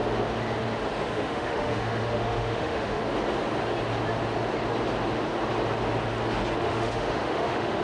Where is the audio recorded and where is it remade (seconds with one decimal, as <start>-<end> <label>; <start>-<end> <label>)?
0.0-1.1 recorded; 1.1-3.0 remade; 3.0-6.6 recorded; 6.6-7.8 remade